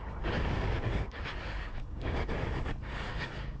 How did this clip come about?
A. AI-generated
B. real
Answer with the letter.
A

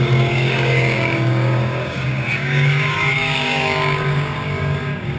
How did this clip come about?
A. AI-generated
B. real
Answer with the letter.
A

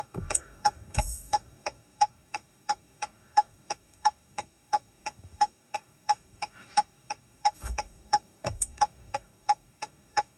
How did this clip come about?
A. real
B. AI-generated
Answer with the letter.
B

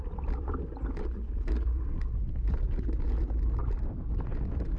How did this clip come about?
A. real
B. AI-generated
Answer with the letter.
A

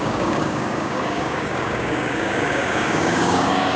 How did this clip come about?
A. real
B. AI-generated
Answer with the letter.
B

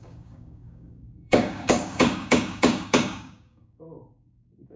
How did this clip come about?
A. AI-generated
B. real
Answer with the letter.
A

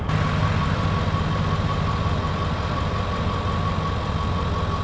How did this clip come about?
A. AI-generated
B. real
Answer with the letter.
B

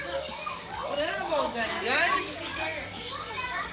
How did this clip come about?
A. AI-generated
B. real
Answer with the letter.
A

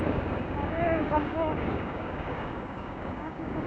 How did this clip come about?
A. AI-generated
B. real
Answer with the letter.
A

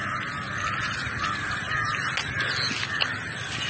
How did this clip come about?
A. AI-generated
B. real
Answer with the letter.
B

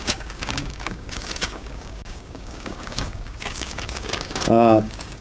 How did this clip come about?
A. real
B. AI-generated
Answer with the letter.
B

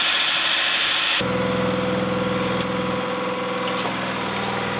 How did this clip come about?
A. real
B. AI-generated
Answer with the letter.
A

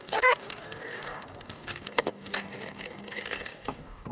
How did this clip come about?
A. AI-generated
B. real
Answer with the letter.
A